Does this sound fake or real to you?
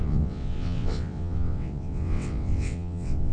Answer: fake